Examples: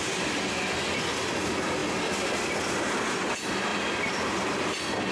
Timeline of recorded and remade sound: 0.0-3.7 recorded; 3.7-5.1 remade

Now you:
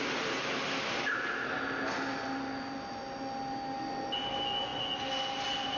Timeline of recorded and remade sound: 0.0-5.8 recorded

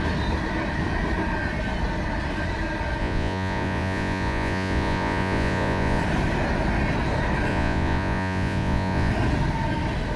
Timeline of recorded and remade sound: 0.0-3.0 recorded; 3.0-6.0 remade; 6.0-7.5 recorded; 7.5-9.1 remade; 9.1-10.2 recorded

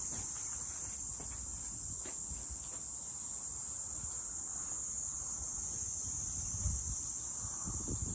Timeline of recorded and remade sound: 0.0-8.1 recorded

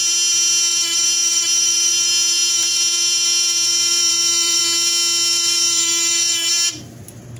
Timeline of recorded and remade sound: 0.0-0.7 recorded; 0.7-4.6 remade; 4.6-5.3 recorded; 5.3-6.5 remade; 6.5-7.4 recorded

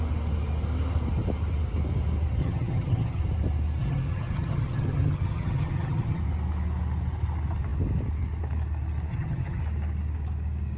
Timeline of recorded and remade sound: 0.0-2.4 recorded; 2.4-3.2 remade; 3.2-3.8 recorded; 3.8-6.2 remade; 6.2-9.1 recorded; 9.1-9.6 remade; 9.6-10.8 recorded